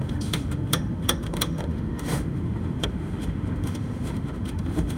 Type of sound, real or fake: fake